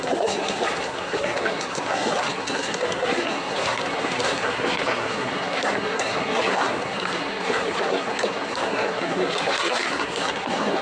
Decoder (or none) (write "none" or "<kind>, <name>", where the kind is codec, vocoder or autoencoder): codec, SNAC